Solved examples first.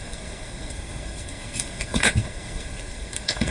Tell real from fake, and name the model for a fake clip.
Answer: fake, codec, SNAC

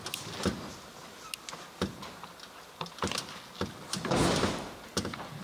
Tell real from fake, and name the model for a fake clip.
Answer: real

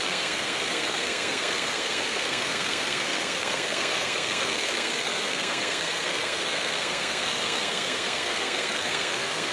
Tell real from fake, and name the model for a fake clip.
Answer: fake, codec, SNAC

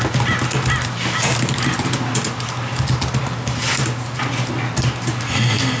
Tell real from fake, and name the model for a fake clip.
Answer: real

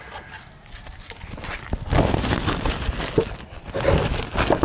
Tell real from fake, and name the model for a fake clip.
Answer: real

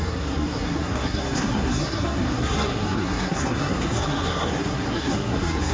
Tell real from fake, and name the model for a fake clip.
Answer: fake, codec, SNAC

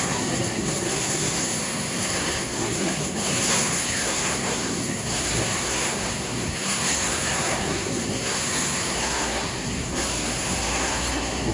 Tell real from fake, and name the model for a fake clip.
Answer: fake, codec, SNAC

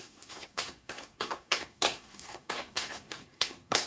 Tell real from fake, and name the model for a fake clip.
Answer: fake, codec, SNAC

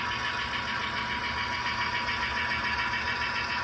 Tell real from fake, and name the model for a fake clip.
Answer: real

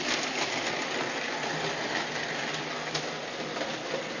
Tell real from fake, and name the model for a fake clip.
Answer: real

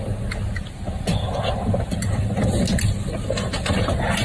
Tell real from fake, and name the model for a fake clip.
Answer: real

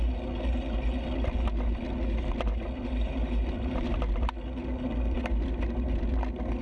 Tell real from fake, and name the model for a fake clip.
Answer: real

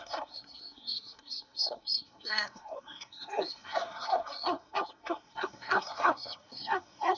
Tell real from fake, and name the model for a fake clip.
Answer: fake, codec, SNAC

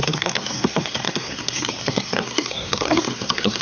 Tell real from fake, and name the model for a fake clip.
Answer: fake, codec, SNAC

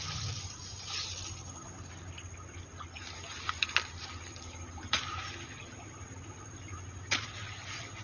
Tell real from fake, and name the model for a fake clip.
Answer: real